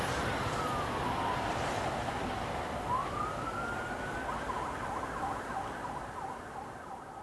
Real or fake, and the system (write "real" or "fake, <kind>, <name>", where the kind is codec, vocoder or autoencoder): real